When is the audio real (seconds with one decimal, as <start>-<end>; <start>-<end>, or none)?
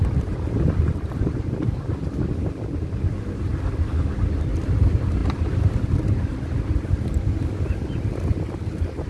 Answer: 0.0-9.1